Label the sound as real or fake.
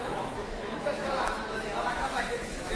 fake